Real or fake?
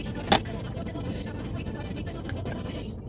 real